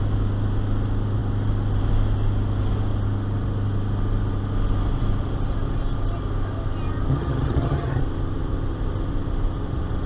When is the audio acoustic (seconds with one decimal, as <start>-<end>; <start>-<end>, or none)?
0.0-7.1; 8.0-10.1